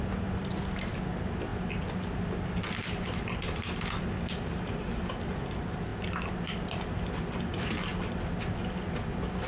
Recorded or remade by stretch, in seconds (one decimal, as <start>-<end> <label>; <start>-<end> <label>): 0.0-1.5 recorded; 1.5-4.0 remade; 4.0-5.9 recorded; 5.9-6.9 remade; 6.9-7.9 recorded; 7.9-8.4 remade; 8.4-9.5 recorded